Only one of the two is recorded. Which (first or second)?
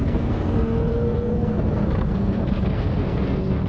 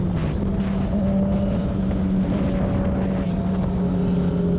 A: second